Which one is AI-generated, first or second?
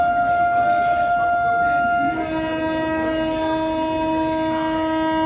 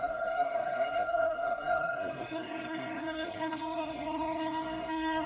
second